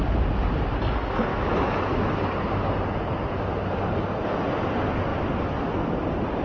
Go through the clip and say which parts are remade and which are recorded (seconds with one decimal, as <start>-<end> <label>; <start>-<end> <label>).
0.0-1.3 recorded; 1.3-2.1 remade; 2.1-6.4 recorded